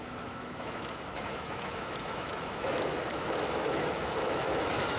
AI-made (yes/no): yes